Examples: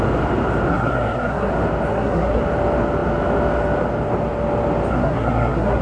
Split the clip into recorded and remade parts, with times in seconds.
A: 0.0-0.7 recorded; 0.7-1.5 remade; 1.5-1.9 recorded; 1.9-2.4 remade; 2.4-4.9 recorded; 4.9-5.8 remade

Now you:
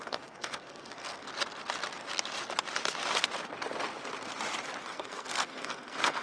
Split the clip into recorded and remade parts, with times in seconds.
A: 0.0-1.3 remade; 1.3-4.8 recorded; 4.8-6.2 remade

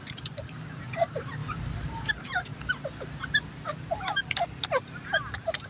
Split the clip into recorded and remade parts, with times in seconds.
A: 0.0-2.5 remade; 2.5-5.7 recorded

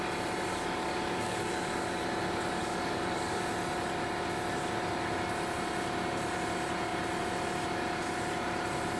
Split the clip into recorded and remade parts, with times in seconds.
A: 0.0-0.5 recorded; 0.5-2.0 remade; 2.0-2.6 recorded; 2.6-3.5 remade; 3.5-9.0 recorded